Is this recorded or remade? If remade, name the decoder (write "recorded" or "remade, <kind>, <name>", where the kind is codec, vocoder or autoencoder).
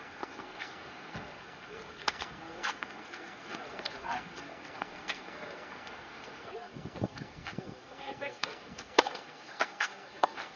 remade, codec, SNAC